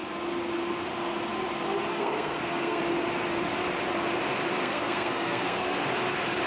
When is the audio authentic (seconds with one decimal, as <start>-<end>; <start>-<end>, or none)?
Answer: 0.0-1.9; 2.8-4.6; 5.8-6.5